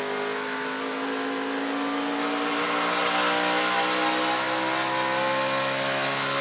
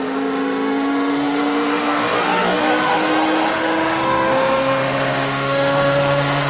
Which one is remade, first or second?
second